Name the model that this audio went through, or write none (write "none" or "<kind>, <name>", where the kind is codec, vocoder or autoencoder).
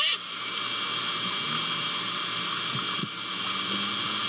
none